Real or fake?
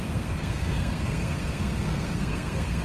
fake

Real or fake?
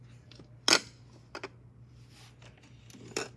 real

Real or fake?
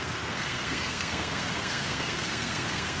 fake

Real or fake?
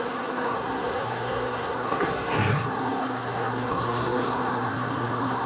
fake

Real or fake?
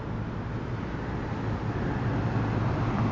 real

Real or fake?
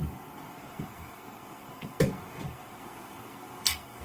fake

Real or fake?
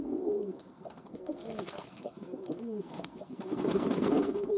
fake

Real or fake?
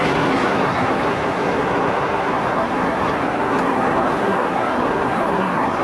fake